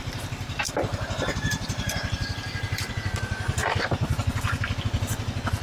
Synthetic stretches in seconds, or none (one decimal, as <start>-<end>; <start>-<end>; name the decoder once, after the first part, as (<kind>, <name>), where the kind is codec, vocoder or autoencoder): 0.9-2.9 (vocoder, BigVGAN v2)